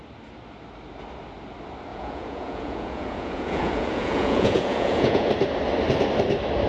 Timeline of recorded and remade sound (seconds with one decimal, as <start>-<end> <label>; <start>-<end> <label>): 0.0-1.9 recorded; 1.9-5.3 remade; 5.3-6.7 recorded